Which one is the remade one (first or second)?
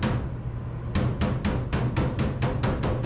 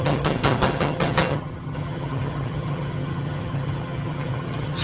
second